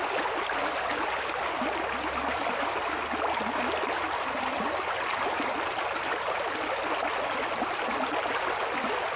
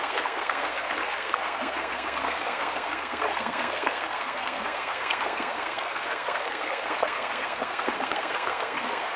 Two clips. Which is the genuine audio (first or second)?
first